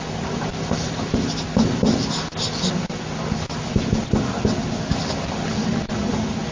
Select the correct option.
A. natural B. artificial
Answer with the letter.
A